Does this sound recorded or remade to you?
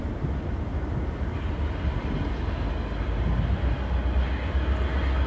recorded